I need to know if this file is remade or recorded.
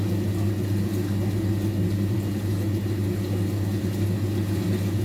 recorded